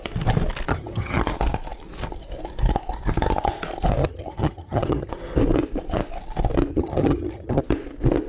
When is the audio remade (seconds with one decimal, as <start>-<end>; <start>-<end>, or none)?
0.7-1.2; 4.0-5.1; 6.7-7.6